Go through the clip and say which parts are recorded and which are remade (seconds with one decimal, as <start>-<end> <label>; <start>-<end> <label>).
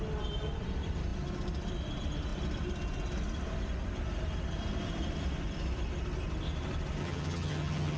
0.0-7.0 recorded; 7.0-8.0 remade